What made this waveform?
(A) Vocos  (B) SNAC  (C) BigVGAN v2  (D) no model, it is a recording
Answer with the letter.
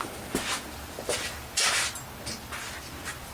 D